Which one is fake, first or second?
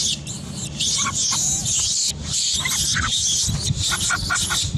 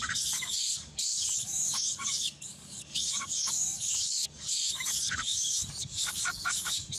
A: second